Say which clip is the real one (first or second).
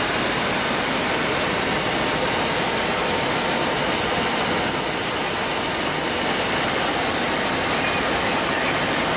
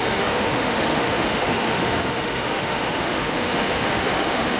first